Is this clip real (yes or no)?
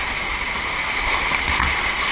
yes